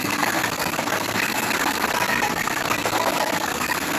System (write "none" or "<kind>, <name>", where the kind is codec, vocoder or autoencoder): codec, SNAC